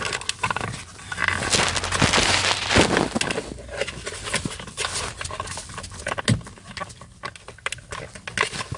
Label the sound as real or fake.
real